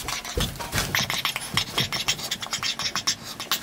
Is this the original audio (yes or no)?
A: yes